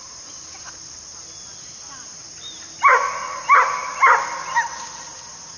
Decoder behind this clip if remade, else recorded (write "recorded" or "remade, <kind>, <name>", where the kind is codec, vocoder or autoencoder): recorded